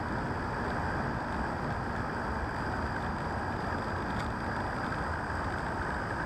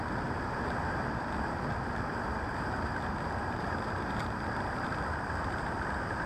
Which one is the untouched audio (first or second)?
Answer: first